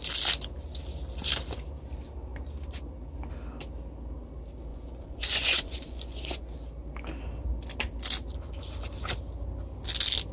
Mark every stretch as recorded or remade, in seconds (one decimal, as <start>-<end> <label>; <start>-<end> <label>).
0.0-4.7 recorded; 4.7-6.4 remade; 6.4-10.3 recorded